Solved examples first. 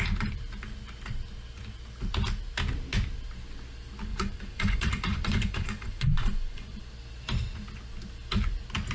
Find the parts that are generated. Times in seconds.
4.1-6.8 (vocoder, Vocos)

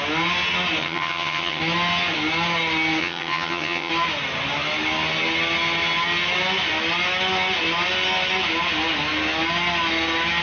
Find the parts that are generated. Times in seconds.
0.8-1.6 (vocoder, HiFi-GAN); 3.0-3.9

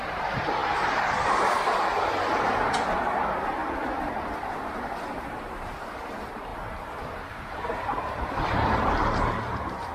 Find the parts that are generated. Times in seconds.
0.0-6.5 (vocoder, BigVGAN v2); 7.3-9.9

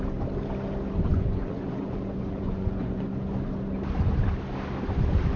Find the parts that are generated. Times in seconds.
1.1-3.1 (vocoder, Vocos)

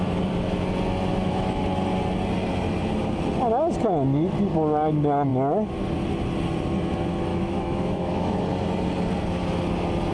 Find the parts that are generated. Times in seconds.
1.1-1.6 (autoencoder, DAC-VAE); 7.3-8.4